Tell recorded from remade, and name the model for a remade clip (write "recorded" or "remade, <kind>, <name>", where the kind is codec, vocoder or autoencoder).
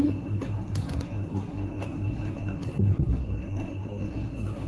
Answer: remade, codec, SNAC